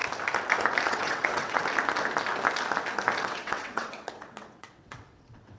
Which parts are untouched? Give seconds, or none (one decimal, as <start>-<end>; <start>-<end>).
0.0-0.9; 1.6-3.2

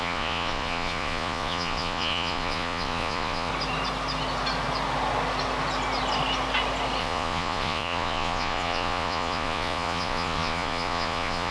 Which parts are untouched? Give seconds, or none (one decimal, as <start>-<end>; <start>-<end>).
3.5-7.0

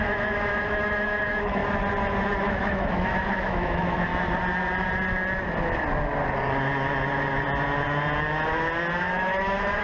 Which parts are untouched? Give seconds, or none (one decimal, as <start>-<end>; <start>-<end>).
1.6-2.4; 4.1-9.0

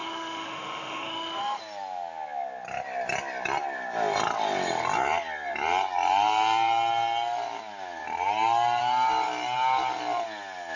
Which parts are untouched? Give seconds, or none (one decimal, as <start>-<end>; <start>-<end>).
1.6-10.8

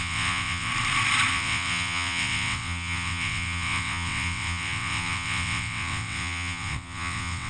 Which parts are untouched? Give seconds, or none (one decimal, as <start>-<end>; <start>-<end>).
0.7-1.3

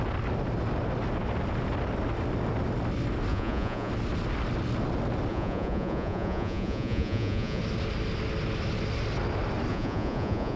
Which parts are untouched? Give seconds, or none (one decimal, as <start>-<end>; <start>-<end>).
0.0-3.3; 3.9-5.3; 7.6-9.7